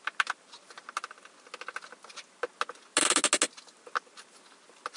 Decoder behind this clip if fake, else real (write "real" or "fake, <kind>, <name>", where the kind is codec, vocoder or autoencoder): real